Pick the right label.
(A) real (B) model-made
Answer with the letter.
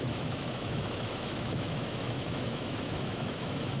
B